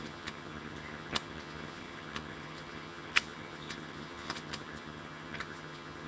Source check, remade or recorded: remade